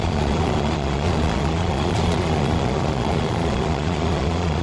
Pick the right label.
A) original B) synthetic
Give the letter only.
B